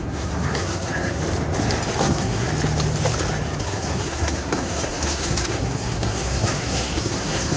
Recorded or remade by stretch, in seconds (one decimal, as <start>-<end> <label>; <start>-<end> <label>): 0.0-1.2 remade; 1.2-2.0 recorded; 2.0-2.5 remade; 2.5-3.6 recorded; 3.6-7.6 remade